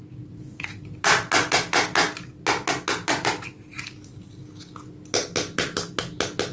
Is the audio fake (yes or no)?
no